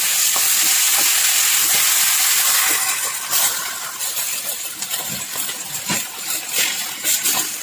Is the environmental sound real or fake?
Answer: real